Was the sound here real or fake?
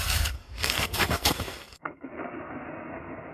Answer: fake